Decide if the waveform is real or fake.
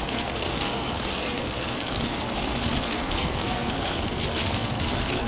fake